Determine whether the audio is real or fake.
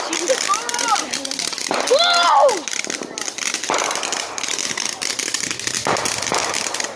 real